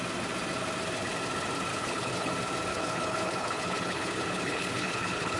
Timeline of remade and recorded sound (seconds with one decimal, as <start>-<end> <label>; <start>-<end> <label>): 0.0-1.7 recorded; 1.7-2.3 remade; 2.3-2.7 recorded; 2.7-5.4 remade